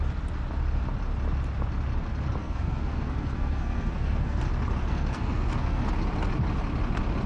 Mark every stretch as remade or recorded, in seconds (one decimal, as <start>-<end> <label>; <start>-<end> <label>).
0.0-2.4 recorded; 2.4-4.4 remade; 4.4-4.9 recorded; 4.9-5.8 remade; 5.8-7.3 recorded